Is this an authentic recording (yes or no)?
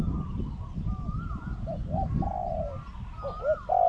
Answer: yes